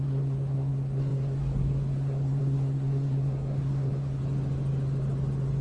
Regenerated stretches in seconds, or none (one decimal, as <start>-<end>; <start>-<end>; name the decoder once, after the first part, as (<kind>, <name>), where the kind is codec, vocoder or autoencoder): 0.0-4.2 (codec, SNAC)